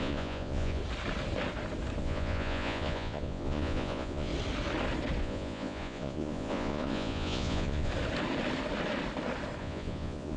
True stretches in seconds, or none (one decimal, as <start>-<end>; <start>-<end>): 0.8-2.0; 4.3-5.2; 7.9-9.6

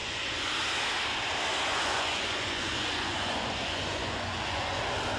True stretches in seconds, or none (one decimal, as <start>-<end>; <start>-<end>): 0.5-1.7; 4.8-5.2

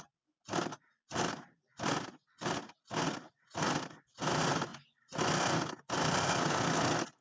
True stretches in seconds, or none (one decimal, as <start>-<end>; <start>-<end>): 0.0-7.2

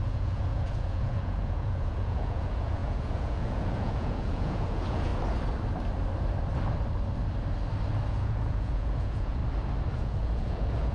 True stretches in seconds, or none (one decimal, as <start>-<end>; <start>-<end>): 5.1-8.1; 9.4-10.0

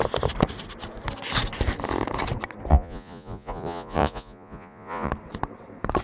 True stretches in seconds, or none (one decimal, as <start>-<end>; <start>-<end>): 0.0-2.7; 5.1-6.0

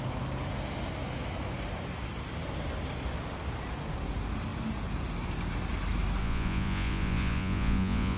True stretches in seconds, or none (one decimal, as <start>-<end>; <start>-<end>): 0.0-6.2

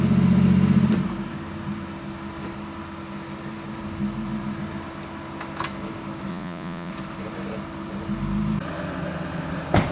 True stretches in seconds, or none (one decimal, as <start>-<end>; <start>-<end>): 0.0-6.3; 6.9-9.9

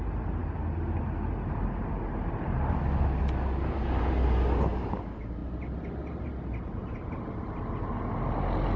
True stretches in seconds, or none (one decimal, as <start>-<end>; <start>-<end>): 0.0-8.8